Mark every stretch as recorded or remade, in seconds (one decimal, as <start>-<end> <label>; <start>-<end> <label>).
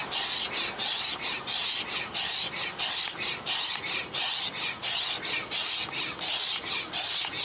0.0-7.4 recorded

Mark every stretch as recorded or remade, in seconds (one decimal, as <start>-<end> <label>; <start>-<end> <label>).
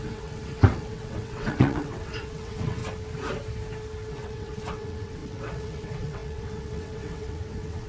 0.0-2.8 remade; 2.8-4.1 recorded; 4.1-7.9 remade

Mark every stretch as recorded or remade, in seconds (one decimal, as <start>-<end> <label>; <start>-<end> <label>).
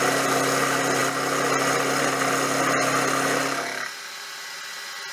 0.0-5.1 recorded